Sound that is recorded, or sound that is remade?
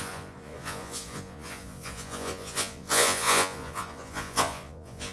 remade